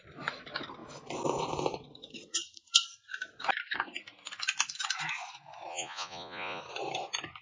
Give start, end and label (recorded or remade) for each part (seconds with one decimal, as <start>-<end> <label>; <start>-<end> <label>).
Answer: 0.0-5.7 recorded; 5.7-6.6 remade; 6.6-7.4 recorded